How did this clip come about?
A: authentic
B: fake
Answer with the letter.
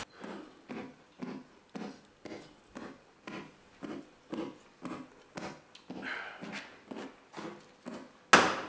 A